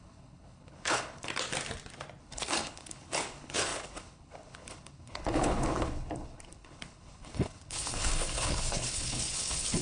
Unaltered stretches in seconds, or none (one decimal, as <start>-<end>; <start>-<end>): 1.3-2.2